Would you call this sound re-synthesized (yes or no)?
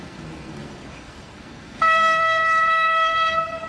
yes